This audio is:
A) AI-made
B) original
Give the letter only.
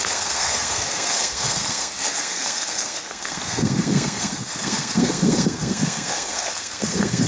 A